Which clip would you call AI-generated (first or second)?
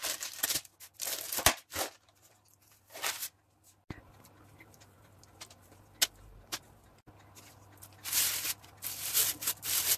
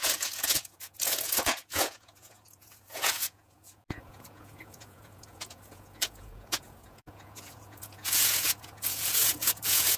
second